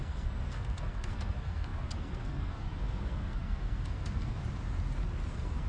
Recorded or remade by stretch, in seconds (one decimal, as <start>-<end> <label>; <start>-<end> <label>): 0.0-4.4 remade; 4.4-5.3 recorded; 5.3-5.7 remade